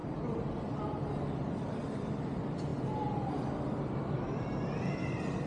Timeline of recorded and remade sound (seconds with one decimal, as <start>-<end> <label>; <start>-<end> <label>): 0.0-5.5 recorded